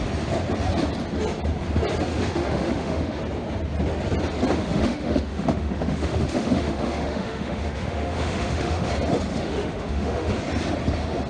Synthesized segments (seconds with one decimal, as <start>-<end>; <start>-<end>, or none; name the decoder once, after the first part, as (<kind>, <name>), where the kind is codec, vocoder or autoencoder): 2.1-3.2 (autoencoder, DAC-VAE); 4.6-8.9; 9.3-10.3